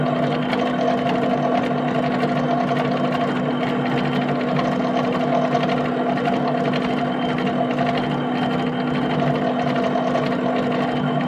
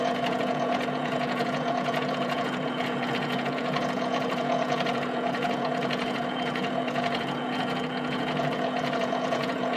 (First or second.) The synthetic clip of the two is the second